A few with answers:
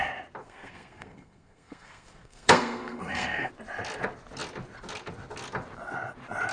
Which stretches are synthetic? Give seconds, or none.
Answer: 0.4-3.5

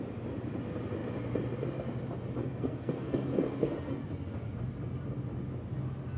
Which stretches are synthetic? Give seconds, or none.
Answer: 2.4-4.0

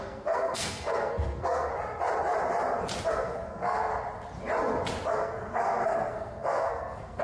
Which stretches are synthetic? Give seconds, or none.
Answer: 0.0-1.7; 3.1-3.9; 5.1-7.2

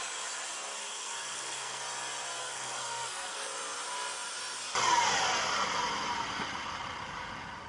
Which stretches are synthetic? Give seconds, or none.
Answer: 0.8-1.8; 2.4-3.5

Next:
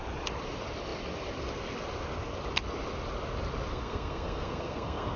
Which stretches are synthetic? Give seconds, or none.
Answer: 3.7-5.2

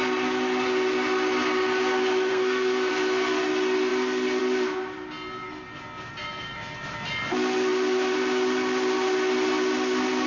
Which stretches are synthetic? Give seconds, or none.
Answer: 2.3-2.9

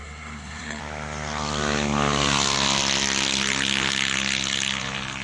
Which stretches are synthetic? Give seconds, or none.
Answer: 0.0-0.8